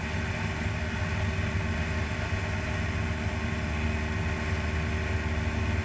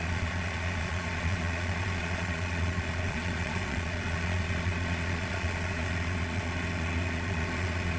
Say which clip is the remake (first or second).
second